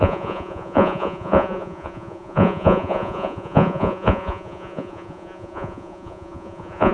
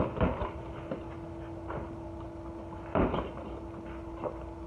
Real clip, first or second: second